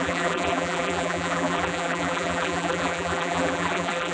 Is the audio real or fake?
fake